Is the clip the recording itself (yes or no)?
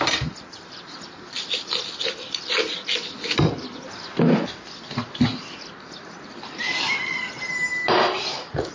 yes